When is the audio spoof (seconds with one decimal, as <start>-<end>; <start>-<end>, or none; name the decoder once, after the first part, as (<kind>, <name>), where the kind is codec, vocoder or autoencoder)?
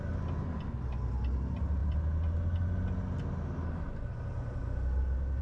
none